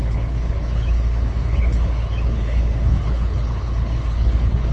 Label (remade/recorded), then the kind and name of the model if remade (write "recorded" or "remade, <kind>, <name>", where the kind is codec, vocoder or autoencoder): remade, codec, HILCodec